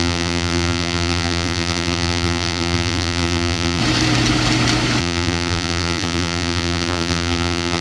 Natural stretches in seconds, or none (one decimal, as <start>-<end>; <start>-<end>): 3.8-5.0